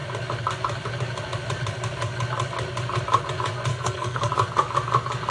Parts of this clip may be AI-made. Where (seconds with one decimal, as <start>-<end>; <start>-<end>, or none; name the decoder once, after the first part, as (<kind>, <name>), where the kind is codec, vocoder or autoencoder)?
3.7-4.3 (codec, SNAC)